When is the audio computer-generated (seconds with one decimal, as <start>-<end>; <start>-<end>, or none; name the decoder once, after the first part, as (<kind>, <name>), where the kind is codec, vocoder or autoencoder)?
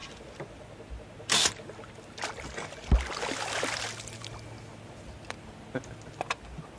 none